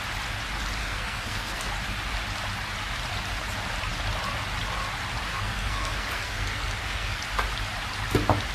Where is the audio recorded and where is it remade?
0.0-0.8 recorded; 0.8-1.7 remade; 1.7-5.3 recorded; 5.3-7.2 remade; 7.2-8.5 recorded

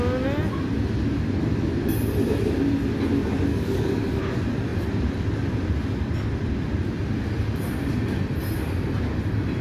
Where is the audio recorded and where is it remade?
0.0-3.5 recorded; 3.5-4.2 remade; 4.2-9.6 recorded

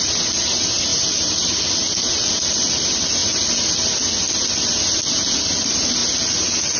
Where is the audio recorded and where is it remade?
0.0-0.9 recorded; 0.9-1.6 remade; 1.6-6.8 recorded